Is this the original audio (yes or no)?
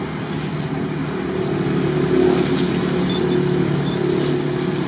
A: yes